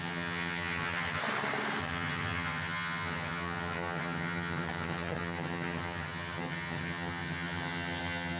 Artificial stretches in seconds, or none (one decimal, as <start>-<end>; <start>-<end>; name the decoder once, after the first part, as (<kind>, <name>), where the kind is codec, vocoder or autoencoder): 0.0-1.2 (vocoder, HiFi-GAN); 1.8-8.4

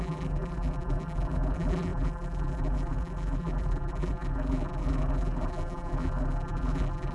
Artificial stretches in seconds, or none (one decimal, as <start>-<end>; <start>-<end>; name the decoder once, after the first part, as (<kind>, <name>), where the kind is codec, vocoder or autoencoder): 0.0-7.1 (vocoder, BigVGAN v2)

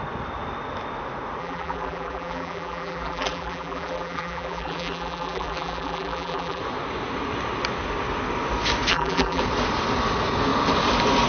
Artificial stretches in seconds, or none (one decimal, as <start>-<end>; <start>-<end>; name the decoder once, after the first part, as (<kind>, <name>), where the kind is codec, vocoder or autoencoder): 1.4-6.6 (vocoder, BigVGAN v2); 8.9-9.4

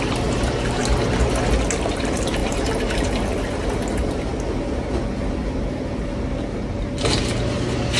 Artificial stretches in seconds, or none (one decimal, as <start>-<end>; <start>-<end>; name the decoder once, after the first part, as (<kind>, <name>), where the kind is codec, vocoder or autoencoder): 0.0-0.8 (vocoder, BigVGAN v2); 1.8-4.3; 7.0-8.0

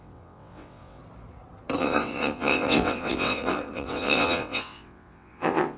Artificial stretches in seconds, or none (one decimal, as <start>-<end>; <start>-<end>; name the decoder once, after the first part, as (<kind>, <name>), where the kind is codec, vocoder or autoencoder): 0.0-1.0 (vocoder, WaveNeXt); 1.8-5.8